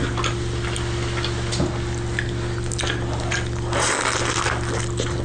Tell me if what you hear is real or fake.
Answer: real